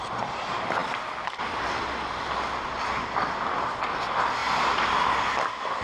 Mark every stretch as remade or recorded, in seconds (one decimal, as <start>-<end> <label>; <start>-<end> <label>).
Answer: 0.0-5.8 recorded